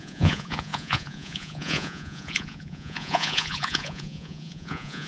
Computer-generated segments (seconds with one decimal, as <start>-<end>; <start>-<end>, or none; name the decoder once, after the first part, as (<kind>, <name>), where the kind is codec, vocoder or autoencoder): 0.0-5.1 (vocoder, Vocos)